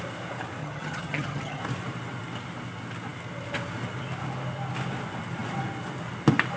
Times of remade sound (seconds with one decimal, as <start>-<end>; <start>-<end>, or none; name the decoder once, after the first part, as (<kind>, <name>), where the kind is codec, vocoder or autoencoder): 0.6-1.6 (vocoder, HiFi-GAN)